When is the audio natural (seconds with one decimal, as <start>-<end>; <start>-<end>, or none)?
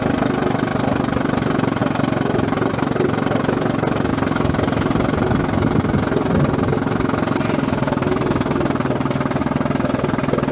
0.0-0.7; 1.4-10.5